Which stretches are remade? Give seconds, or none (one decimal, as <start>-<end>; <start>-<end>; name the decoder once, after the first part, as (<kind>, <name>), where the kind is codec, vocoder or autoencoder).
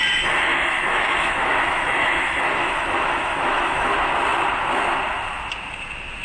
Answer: 0.5-3.9 (autoencoder, DAC-VAE)